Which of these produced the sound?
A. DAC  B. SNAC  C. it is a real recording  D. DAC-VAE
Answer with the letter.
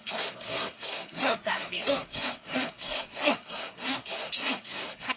B